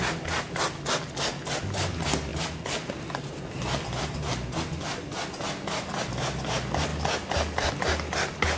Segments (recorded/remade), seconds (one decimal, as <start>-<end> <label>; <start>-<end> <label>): 0.0-8.6 recorded